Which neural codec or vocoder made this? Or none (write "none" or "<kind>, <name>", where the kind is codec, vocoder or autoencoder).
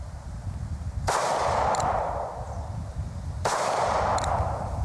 none